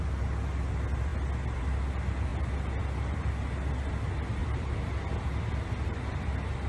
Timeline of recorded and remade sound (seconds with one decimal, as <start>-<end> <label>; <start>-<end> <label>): 0.0-4.4 recorded; 4.4-5.7 remade; 5.7-6.7 recorded